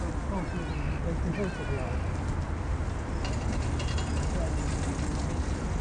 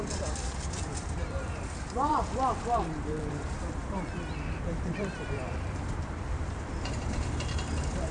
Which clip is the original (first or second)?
first